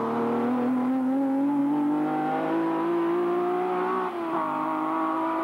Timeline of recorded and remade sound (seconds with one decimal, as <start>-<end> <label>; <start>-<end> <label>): 0.0-5.4 recorded